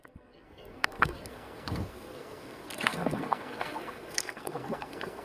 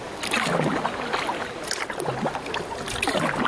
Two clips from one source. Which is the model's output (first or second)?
first